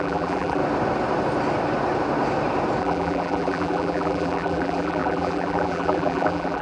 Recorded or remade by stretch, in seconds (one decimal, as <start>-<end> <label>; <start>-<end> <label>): 0.0-0.6 remade; 0.6-2.8 recorded; 2.8-6.6 remade